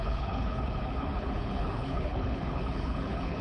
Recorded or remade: remade